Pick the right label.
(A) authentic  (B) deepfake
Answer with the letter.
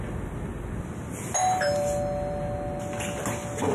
A